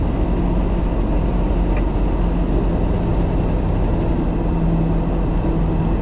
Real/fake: real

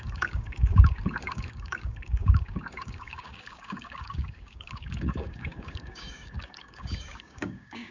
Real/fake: fake